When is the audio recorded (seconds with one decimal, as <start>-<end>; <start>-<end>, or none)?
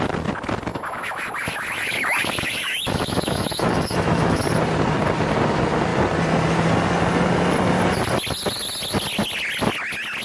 0.0-0.7; 4.4-10.2